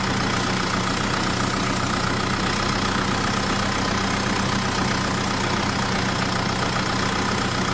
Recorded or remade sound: recorded